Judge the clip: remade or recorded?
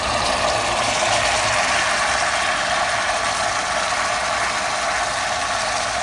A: recorded